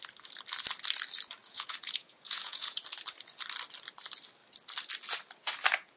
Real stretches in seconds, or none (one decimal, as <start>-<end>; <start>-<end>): 0.0-1.4; 2.8-6.0